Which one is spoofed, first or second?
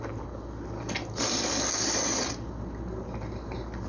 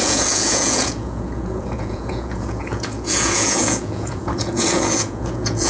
second